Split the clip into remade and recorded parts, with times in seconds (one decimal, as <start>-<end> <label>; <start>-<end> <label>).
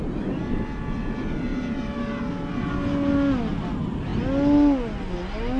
0.0-5.6 recorded